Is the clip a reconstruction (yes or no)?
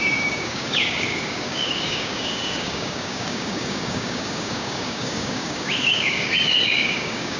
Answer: yes